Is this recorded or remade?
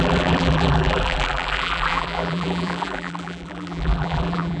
remade